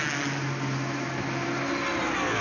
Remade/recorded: recorded